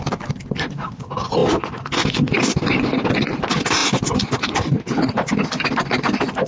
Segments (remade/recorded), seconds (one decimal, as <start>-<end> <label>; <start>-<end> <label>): 0.0-6.5 recorded